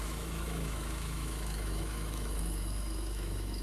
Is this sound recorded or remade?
remade